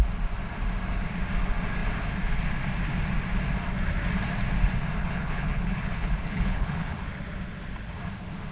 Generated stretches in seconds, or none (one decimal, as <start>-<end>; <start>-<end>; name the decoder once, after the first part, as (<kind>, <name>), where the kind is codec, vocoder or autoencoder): 5.0-7.0 (codec, HILCodec)